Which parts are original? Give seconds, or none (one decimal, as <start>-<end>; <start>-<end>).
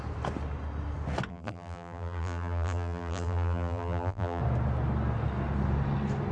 0.0-1.3; 4.4-6.3